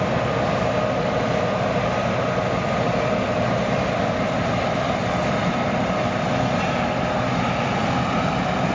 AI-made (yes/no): no